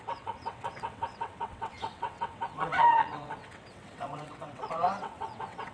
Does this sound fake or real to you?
fake